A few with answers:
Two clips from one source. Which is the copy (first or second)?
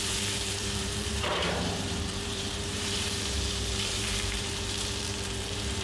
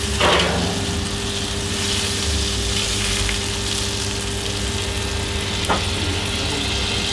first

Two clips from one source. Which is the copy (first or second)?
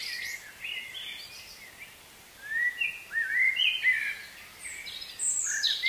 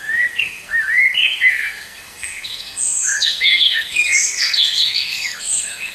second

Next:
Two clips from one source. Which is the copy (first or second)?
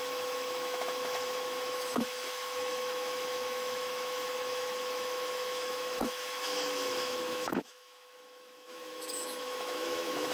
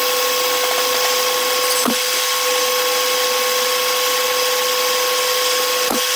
first